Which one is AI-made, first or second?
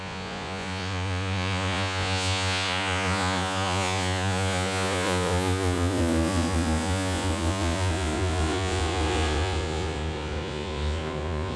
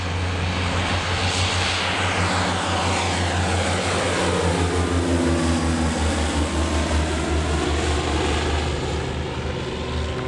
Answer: first